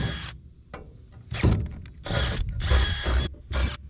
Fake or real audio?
real